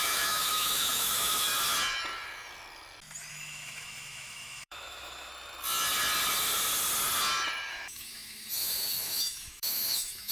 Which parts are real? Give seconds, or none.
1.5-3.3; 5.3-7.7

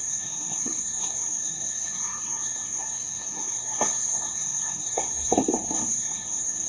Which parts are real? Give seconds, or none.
none

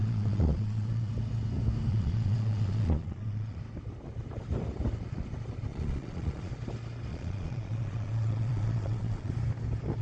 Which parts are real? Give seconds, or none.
1.1-1.9; 3.6-5.7; 6.5-7.1; 9.3-10.0

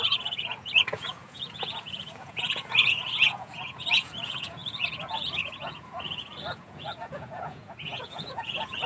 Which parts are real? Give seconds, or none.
none

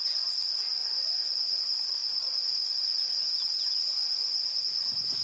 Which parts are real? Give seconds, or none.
0.0-0.8; 1.6-2.0; 2.8-5.2

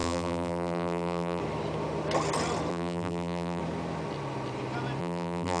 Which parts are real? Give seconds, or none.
1.4-2.7; 3.6-5.0

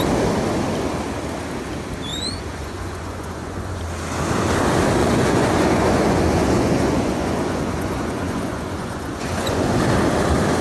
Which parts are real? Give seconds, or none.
0.0-2.1; 3.8-5.0; 9.8-10.6